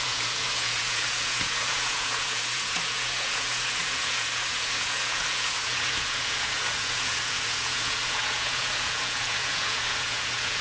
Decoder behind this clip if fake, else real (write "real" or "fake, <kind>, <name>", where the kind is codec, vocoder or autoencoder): fake, vocoder, Vocos